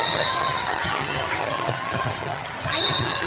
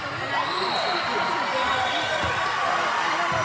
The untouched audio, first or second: second